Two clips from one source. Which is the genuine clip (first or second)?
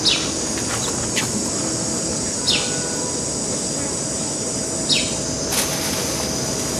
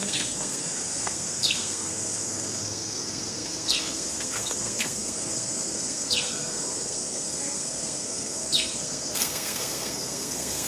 first